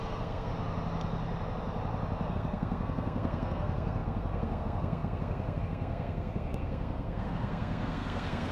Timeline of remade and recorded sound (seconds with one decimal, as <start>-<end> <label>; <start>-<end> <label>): 0.0-0.5 remade; 0.5-2.3 recorded; 2.3-8.5 remade